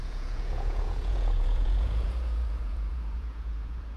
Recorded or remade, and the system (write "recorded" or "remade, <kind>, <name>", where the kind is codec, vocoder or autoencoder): remade, vocoder, Vocos